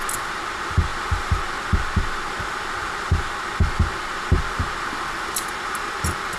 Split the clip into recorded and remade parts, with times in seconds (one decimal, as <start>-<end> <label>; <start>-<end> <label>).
0.0-6.4 recorded